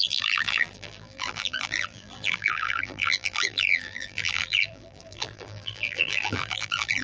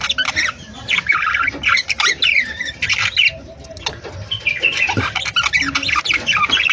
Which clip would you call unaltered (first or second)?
second